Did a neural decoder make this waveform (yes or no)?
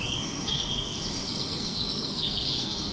yes